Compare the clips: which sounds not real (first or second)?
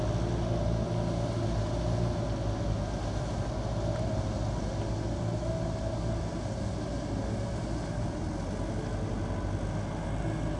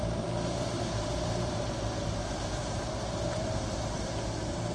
second